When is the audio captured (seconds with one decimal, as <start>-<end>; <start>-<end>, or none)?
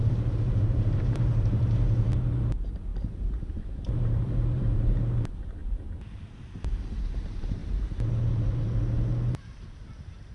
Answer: none